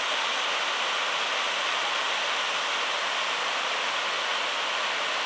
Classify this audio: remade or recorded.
recorded